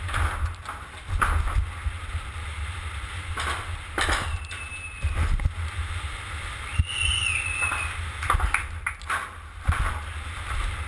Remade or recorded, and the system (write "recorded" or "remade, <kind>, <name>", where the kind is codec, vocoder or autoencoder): recorded